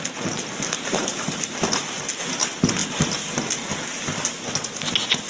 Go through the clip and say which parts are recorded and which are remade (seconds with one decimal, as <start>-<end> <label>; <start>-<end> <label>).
0.0-1.0 recorded; 1.0-1.9 remade; 1.9-2.8 recorded; 2.8-3.3 remade; 3.3-5.3 recorded